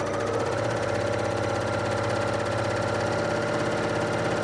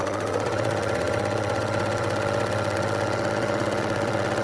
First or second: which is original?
first